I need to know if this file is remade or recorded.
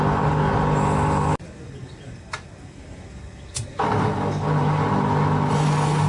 recorded